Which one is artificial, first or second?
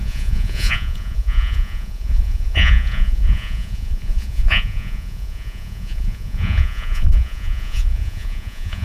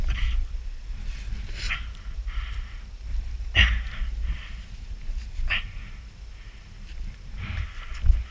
first